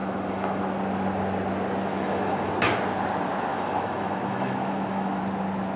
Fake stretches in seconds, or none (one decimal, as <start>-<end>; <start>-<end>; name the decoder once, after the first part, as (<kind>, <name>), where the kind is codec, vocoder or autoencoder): 0.0-0.6 (autoencoder, DAC-VAE); 1.9-2.5; 3.5-5.2